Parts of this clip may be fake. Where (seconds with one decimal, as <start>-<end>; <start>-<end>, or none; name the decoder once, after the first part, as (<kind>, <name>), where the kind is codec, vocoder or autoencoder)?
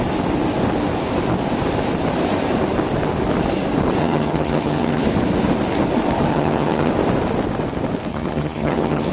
4.0-5.0 (vocoder, HiFi-GAN); 6.3-6.9; 8.1-9.1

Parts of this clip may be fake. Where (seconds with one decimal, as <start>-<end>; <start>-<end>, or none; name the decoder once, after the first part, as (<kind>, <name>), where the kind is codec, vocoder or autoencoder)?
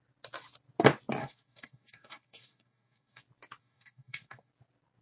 1.2-3.2 (codec, DAC); 3.6-4.5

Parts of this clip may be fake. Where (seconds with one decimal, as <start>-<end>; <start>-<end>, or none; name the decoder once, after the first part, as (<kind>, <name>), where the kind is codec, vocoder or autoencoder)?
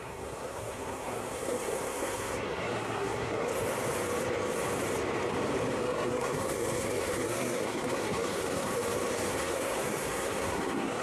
0.0-3.5 (codec, SNAC); 5.8-8.7; 9.3-11.0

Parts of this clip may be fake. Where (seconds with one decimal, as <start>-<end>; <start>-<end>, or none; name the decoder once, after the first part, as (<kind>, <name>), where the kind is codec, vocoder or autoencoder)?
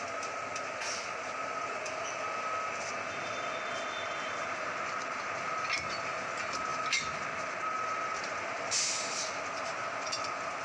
none